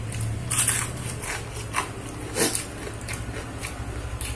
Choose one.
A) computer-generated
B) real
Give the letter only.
B